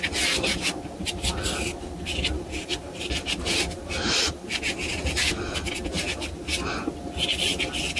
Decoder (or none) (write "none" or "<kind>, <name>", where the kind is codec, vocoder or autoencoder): none